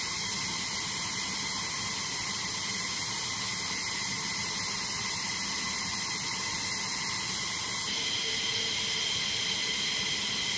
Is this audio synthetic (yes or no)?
no